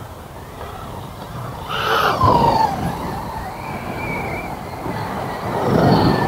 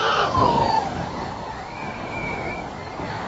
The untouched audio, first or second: first